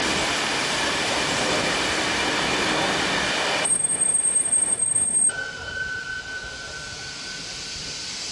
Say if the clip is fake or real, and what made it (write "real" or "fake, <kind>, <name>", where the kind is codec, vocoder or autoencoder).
fake, vocoder, BigVGAN v2